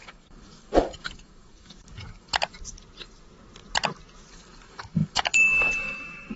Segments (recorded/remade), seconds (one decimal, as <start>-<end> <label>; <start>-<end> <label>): 0.0-2.3 remade; 2.3-4.3 recorded; 4.3-6.4 remade